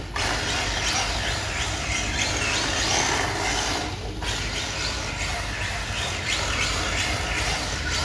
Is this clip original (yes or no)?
yes